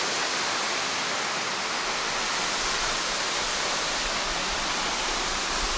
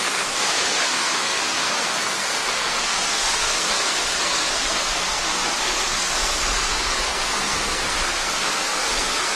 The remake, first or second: second